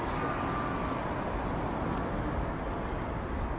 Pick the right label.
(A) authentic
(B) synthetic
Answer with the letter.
A